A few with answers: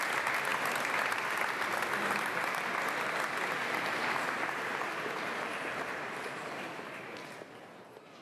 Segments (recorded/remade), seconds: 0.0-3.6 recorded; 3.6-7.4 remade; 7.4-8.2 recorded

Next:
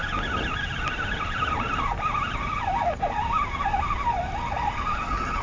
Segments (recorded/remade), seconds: 0.0-5.4 recorded